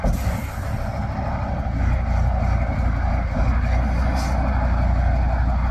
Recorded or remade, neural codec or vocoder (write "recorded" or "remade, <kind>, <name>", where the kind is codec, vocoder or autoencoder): recorded